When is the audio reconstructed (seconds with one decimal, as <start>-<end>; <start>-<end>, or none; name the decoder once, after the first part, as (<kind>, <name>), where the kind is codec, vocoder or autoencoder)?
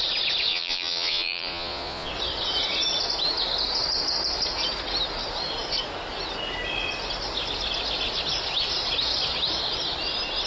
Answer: 0.5-2.1 (vocoder, Vocos)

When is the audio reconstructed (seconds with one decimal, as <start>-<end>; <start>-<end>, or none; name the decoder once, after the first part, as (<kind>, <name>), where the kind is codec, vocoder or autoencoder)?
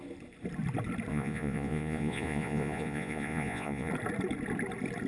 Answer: 1.1-3.9 (vocoder, Vocos)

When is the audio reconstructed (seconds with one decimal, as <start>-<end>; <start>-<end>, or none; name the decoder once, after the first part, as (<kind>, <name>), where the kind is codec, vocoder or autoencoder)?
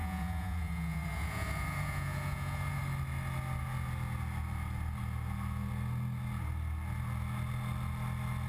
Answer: 0.0-2.8 (vocoder, Vocos)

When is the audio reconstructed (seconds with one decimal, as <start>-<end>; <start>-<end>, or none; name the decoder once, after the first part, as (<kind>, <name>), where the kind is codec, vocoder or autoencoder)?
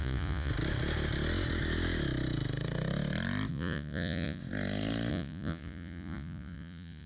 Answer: 0.0-0.5 (vocoder, Vocos); 3.5-4.4; 5.1-7.1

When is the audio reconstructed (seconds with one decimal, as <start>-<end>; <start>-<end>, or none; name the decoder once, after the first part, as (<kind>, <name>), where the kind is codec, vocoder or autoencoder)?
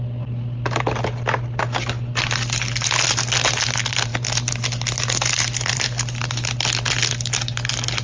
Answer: none